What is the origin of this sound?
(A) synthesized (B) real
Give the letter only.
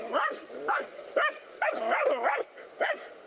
B